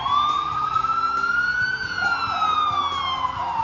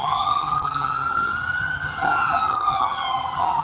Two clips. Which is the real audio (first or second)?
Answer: first